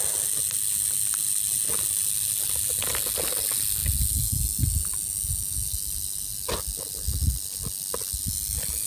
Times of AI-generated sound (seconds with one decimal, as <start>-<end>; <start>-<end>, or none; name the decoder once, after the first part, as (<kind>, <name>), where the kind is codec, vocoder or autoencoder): none